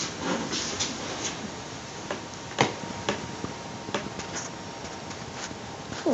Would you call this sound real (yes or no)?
yes